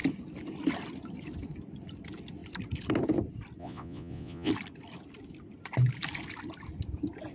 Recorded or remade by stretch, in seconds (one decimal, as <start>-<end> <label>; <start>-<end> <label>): 0.0-3.6 recorded; 3.6-4.5 remade; 4.5-7.3 recorded